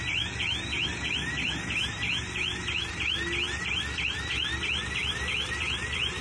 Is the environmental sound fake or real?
real